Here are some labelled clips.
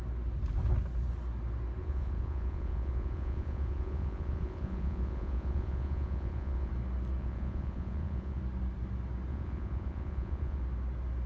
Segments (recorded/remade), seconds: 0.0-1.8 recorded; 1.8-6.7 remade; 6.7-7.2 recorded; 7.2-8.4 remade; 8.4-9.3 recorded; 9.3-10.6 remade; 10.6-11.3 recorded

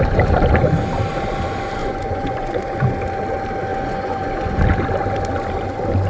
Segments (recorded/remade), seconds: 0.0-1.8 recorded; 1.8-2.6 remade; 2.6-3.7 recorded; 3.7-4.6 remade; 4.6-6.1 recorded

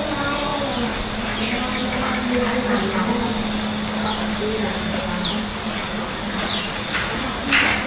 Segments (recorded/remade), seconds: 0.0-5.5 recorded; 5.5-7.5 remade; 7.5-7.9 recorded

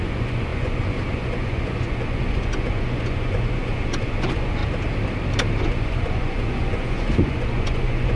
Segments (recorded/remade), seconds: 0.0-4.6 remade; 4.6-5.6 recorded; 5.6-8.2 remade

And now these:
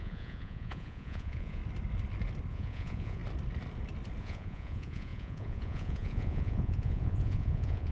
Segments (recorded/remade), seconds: 0.0-1.6 remade; 1.6-2.5 recorded; 2.5-3.2 remade; 3.2-4.2 recorded; 4.2-7.9 remade

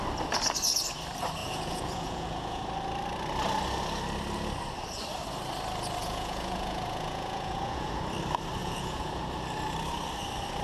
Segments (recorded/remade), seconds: 0.0-1.4 recorded; 1.4-2.6 remade; 2.6-6.0 recorded; 6.0-8.0 remade; 8.0-8.6 recorded; 8.6-9.2 remade; 9.2-10.6 recorded